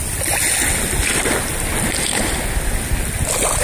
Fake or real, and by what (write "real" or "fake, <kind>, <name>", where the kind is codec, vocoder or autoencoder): real